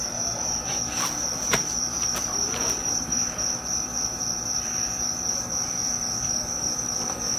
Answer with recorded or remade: remade